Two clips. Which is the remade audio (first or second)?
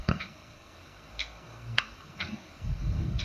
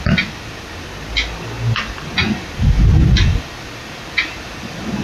first